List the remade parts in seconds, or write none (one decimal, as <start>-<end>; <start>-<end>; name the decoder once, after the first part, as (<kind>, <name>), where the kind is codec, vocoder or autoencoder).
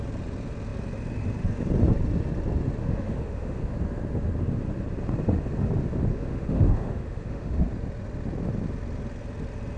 2.8-3.6 (autoencoder, DAC-VAE); 6.1-7.6